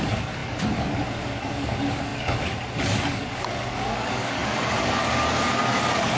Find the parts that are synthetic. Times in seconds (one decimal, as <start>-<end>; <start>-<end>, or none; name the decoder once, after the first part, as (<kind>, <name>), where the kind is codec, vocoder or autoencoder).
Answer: 0.0-6.2 (codec, DAC)